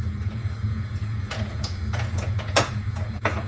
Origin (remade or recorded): remade